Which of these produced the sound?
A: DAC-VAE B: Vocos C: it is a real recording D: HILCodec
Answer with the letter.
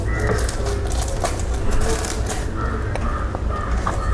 C